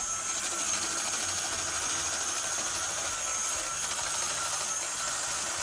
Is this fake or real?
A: real